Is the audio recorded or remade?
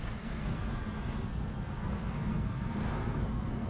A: remade